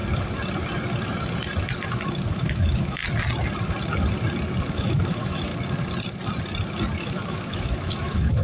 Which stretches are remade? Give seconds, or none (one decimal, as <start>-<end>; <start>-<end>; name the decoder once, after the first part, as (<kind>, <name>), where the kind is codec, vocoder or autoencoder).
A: 2.3-3.0 (autoencoder, DAC-VAE); 4.7-5.5; 7.0-8.4